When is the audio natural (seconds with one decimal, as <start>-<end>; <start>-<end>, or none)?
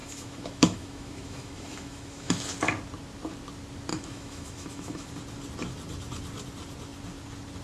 2.5-3.9; 5.1-7.6